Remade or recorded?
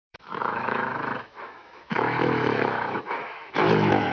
remade